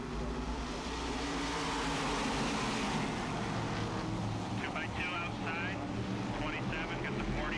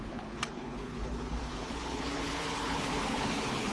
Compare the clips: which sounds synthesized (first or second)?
second